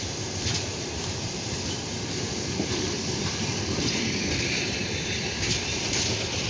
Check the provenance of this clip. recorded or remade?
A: remade